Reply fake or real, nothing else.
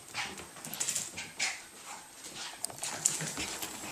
real